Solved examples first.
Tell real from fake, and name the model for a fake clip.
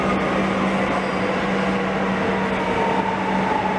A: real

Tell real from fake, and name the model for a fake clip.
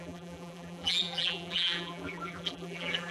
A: fake, vocoder, BigVGAN v2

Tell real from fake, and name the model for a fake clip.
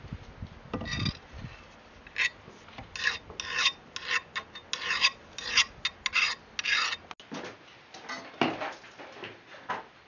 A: real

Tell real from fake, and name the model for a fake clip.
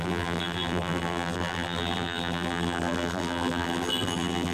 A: fake, vocoder, BigVGAN v2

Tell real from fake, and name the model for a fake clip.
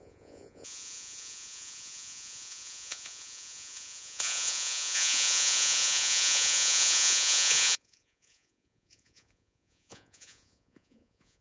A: fake, vocoder, Vocos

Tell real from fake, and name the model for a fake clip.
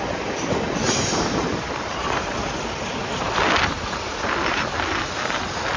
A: real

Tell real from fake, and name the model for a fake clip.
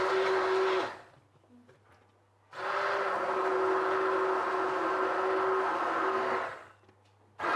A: real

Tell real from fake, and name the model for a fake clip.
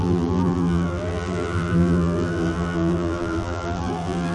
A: fake, vocoder, BigVGAN v2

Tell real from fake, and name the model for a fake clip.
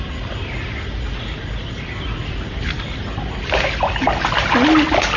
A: real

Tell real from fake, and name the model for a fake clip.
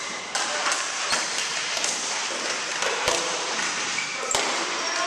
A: fake, vocoder, BigVGAN v2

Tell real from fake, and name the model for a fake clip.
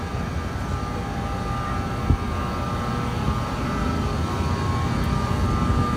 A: real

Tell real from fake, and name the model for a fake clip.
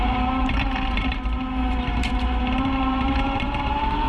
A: fake, vocoder, BigVGAN v2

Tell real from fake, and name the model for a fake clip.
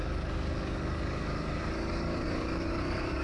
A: fake, codec, DAC